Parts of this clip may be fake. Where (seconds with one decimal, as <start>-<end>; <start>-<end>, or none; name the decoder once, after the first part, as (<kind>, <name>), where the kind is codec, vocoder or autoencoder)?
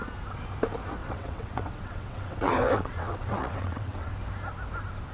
1.0-4.1 (vocoder, WaveNeXt)